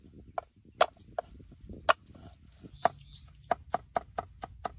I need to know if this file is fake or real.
real